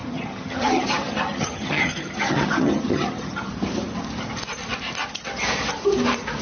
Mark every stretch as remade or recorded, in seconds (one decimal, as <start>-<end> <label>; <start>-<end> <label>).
0.0-3.5 remade; 3.5-6.4 recorded